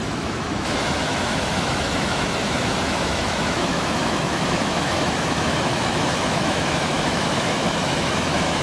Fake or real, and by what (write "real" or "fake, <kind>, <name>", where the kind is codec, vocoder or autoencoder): fake, autoencoder, DAC-VAE